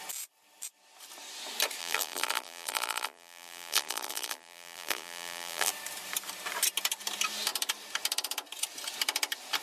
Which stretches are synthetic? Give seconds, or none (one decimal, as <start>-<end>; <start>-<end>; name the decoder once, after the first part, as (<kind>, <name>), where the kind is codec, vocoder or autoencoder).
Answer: 1.8-5.7 (vocoder, BigVGAN v2)